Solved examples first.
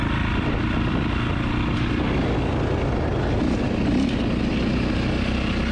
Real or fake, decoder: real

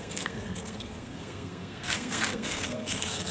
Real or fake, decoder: fake, codec, SNAC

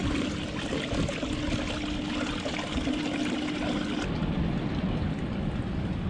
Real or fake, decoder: real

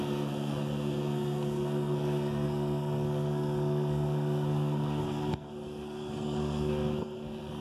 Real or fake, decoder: fake, codec, SNAC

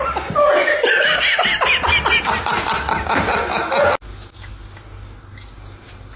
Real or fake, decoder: real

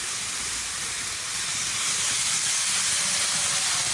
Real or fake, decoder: real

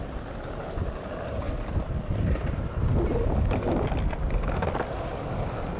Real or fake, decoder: real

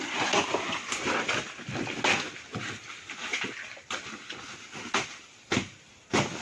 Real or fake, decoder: real